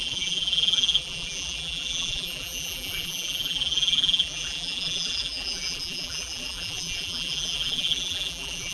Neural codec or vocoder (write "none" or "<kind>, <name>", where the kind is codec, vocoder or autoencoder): vocoder, BigVGAN v2